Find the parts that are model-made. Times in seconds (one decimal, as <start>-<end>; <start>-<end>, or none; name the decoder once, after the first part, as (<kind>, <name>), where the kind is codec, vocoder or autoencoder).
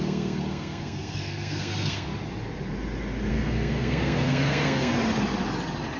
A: 0.0-2.1 (codec, SNAC); 3.3-4.9